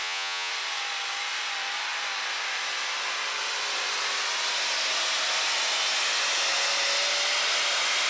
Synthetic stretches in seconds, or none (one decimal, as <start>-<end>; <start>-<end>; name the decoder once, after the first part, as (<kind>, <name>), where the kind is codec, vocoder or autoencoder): 0.0-0.5 (vocoder, Vocos)